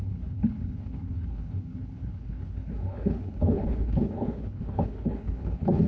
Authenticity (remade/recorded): remade